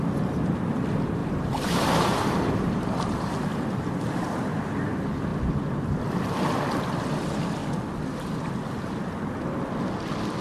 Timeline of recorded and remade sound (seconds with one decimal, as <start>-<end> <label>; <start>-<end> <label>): 0.0-1.2 recorded; 1.2-3.3 remade; 3.3-10.4 recorded